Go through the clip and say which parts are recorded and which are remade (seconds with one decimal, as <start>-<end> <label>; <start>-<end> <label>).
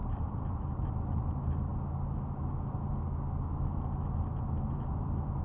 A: 0.0-1.7 remade; 1.7-4.9 recorded; 4.9-5.4 remade